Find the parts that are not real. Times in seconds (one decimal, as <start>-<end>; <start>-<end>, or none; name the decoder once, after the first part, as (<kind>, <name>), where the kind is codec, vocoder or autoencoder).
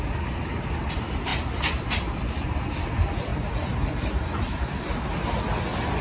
3.3-5.3 (vocoder, BigVGAN v2)